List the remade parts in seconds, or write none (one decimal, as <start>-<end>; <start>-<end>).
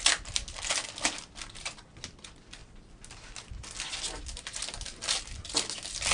none